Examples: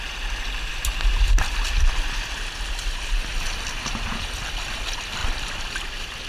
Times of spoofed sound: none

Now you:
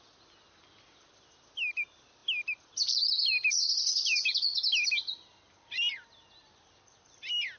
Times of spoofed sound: none

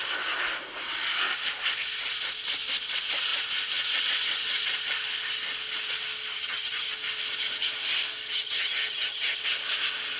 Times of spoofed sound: 6.3-6.9 (vocoder, HiFi-GAN); 8.3-9.4

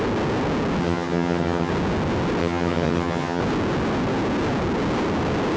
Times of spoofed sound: 0.8-1.7 (vocoder, HiFi-GAN); 2.4-3.4

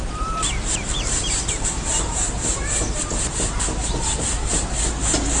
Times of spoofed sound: 0.0-4.6 (vocoder, BigVGAN v2)

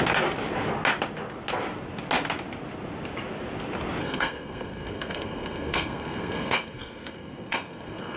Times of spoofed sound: 4.0-8.2 (codec, SNAC)

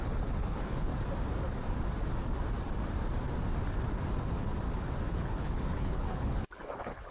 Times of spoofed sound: 0.0-0.9 (codec, HILCodec); 5.1-7.1